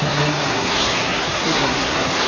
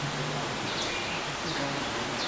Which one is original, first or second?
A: second